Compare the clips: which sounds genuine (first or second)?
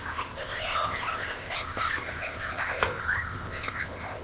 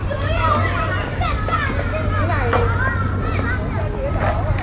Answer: second